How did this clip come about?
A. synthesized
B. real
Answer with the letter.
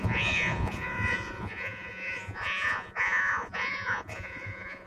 A